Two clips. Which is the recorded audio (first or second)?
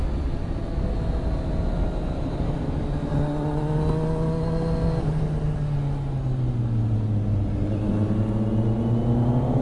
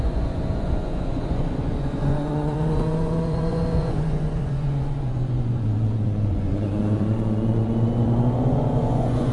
first